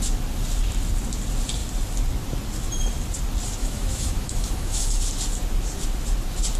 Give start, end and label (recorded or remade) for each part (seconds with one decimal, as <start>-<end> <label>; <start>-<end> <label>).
0.0-3.6 recorded; 3.6-5.0 remade; 5.0-6.6 recorded